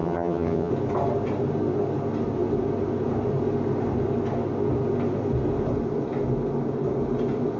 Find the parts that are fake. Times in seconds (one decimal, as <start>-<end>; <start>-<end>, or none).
0.0-0.7